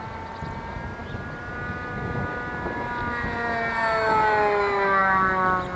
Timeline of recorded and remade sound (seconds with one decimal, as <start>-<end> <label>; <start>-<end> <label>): 0.0-5.8 recorded